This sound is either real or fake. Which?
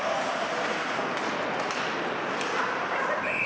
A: real